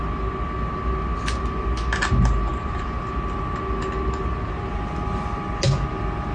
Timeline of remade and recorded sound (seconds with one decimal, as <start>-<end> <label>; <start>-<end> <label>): 0.0-2.5 recorded; 2.5-3.0 remade; 3.0-6.3 recorded